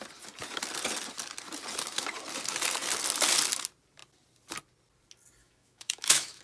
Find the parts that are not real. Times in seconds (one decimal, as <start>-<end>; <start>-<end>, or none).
5.4-6.4